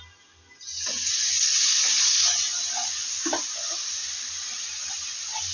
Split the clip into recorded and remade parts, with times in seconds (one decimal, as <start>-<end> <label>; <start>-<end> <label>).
0.0-5.5 recorded